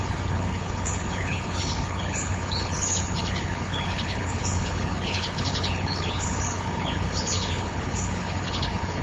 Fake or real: fake